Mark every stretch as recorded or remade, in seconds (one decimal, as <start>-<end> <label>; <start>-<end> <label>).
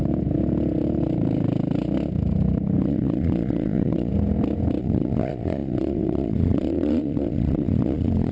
0.0-2.8 recorded; 2.8-4.1 remade; 4.1-4.8 recorded; 4.8-8.3 remade